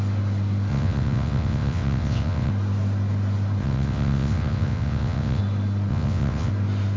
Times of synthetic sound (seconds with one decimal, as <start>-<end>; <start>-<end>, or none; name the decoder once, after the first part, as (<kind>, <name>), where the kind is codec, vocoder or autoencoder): 0.7-2.5 (vocoder, WaveNeXt); 3.6-5.4; 5.9-6.5